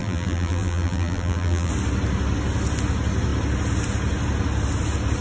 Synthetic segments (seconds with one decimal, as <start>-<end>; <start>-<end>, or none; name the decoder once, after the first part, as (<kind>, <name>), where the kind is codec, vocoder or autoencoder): 0.0-1.7 (vocoder, BigVGAN v2)